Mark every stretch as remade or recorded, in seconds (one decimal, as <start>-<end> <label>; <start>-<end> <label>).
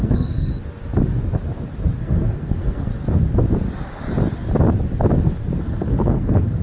0.0-0.5 remade; 0.5-1.9 recorded; 1.9-2.9 remade; 2.9-5.6 recorded; 5.6-6.6 remade